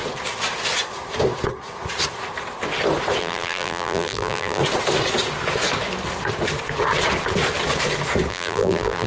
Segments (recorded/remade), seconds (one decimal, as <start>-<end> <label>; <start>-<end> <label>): 0.0-3.2 recorded; 3.2-4.6 remade; 4.6-8.3 recorded; 8.3-9.1 remade